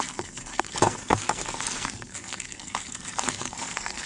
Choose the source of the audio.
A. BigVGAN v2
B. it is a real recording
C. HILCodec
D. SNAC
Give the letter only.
D